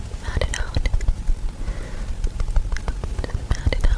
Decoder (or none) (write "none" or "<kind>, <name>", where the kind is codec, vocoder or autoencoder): none